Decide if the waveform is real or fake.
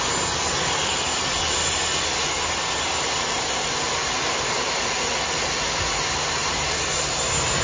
real